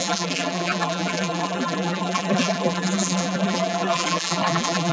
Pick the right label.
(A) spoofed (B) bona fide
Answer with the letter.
A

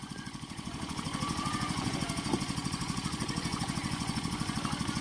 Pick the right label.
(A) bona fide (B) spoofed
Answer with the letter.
B